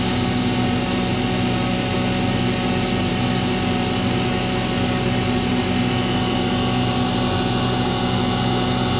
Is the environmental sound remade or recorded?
recorded